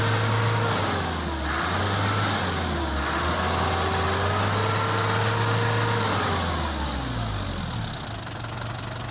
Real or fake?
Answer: real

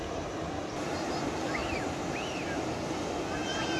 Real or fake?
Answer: real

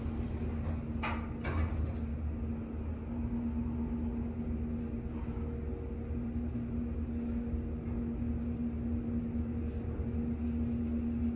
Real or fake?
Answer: real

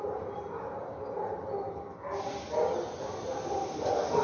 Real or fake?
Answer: real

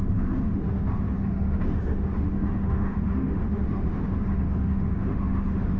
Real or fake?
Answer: fake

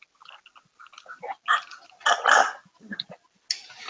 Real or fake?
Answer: real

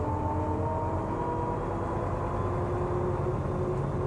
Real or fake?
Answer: real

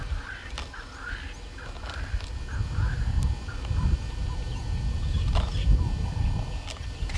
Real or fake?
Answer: real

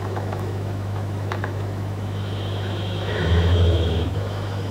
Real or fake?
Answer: fake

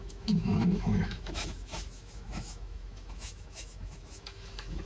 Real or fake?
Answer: fake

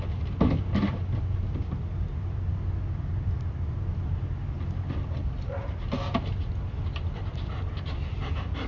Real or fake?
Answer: real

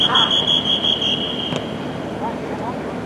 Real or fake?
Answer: real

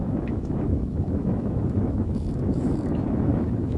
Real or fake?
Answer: fake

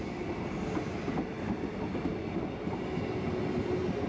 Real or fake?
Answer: real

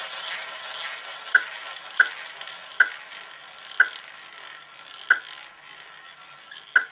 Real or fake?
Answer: real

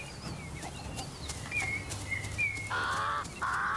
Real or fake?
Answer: real